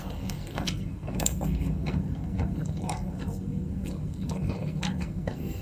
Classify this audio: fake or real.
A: fake